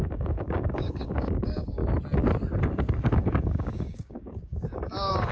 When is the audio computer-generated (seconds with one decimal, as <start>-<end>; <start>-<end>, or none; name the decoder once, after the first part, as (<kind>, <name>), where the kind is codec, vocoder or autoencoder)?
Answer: 0.0-1.8 (codec, DAC); 2.6-5.3